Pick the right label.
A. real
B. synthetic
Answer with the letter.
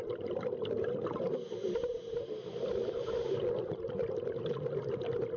A